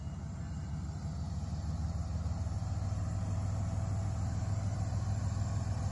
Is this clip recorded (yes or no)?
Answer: yes